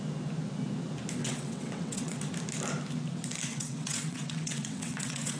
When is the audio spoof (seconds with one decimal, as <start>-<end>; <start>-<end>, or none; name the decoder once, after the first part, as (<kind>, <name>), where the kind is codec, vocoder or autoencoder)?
1.2-2.2 (vocoder, WaveNeXt); 3.5-5.4